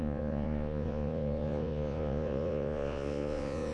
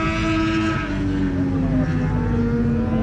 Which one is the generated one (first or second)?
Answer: first